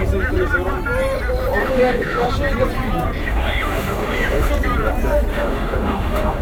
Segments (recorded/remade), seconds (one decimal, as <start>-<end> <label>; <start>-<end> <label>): 0.0-1.6 recorded; 1.6-2.3 remade; 2.3-3.2 recorded; 3.2-4.5 remade; 4.5-5.3 recorded; 5.3-6.4 remade